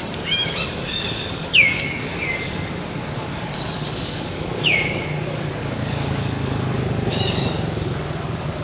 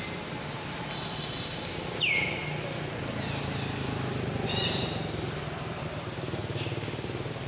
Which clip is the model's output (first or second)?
first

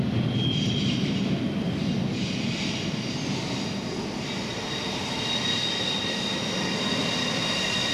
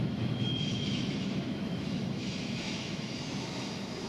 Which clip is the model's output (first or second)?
second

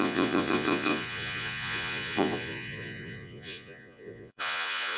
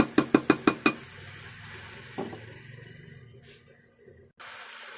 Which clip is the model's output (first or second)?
first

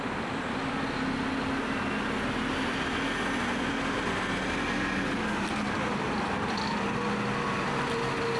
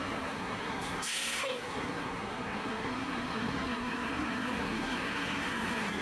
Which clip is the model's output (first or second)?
second